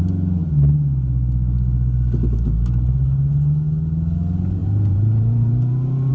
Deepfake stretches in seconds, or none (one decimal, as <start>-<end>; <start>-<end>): 4.6-6.1